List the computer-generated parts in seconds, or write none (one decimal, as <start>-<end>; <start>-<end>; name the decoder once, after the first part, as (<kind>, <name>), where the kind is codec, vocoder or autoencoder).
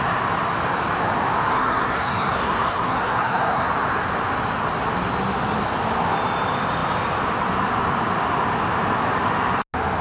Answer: 1.5-3.7 (codec, SNAC)